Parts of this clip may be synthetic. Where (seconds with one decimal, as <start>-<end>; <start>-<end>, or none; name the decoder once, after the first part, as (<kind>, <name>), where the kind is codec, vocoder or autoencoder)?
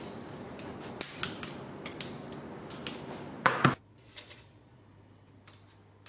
3.8-4.8 (vocoder, Vocos)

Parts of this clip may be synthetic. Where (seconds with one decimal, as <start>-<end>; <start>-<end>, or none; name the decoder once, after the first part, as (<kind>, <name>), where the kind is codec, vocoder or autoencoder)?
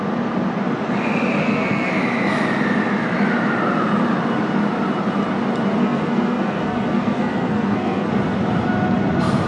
1.4-2.0 (codec, SNAC); 5.8-8.1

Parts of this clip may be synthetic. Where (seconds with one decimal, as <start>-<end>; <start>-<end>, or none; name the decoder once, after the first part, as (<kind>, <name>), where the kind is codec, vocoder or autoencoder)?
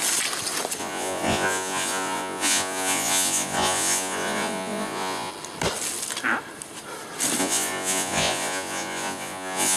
0.8-5.3 (vocoder, Vocos); 7.4-9.8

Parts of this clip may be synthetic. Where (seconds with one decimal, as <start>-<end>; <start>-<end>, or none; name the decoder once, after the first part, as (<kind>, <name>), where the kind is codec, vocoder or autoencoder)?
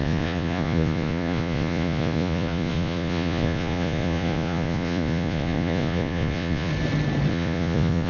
0.0-6.7 (vocoder, Vocos); 7.3-8.1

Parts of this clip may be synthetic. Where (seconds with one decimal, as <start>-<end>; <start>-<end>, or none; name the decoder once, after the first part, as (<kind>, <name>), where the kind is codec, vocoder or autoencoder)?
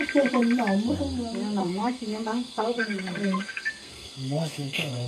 1.6-5.1 (codec, SNAC)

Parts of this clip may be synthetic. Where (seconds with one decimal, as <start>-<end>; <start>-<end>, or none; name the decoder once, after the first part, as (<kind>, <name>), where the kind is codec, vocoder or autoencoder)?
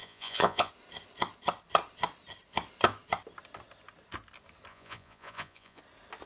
0.0-0.7 (vocoder, Vocos); 4.7-5.8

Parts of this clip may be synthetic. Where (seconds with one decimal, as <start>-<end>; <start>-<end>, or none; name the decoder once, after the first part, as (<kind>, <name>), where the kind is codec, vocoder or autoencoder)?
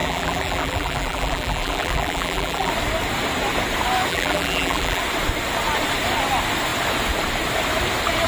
0.0-2.7 (vocoder, BigVGAN v2); 4.1-5.0